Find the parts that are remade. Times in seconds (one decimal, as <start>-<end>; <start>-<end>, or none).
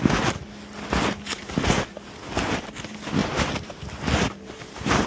none